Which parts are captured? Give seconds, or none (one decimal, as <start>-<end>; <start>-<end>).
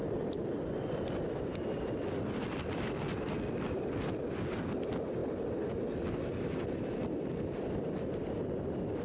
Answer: 0.0-9.0